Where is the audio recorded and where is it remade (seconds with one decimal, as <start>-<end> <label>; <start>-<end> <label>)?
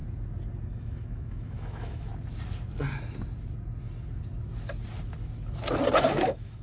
0.0-0.8 recorded; 0.8-2.1 remade; 2.1-6.1 recorded; 6.1-6.6 remade